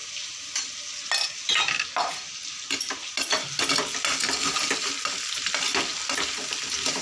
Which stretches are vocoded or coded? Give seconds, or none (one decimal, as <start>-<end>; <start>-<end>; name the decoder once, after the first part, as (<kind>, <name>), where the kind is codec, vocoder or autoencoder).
none